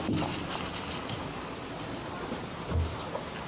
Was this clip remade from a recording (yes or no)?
no